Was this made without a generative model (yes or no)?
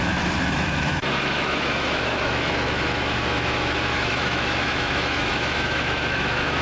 no